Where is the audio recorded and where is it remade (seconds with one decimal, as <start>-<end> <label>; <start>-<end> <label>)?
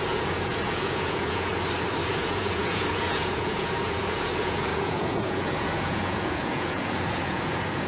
0.0-1.5 remade; 1.5-2.1 recorded; 2.1-7.9 remade